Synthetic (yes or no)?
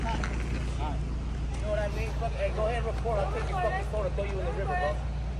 no